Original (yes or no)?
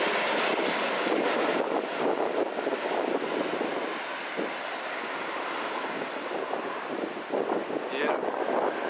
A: yes